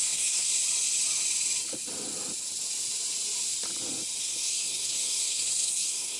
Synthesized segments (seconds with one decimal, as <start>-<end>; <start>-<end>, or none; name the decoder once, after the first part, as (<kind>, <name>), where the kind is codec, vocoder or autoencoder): 0.0-0.5 (codec, SNAC); 4.2-6.2